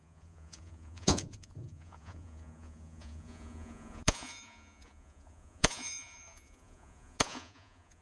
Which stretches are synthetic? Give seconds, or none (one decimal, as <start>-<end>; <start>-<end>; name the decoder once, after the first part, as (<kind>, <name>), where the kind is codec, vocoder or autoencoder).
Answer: 0.0-8.0 (vocoder, Vocos)